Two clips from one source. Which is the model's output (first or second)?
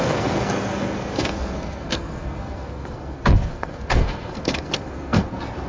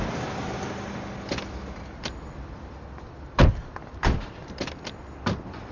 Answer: first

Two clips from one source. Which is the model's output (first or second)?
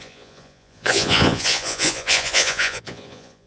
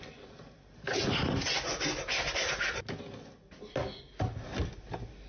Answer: first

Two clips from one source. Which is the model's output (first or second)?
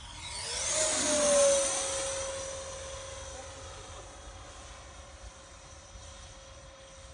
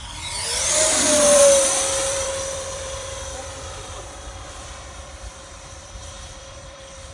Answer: second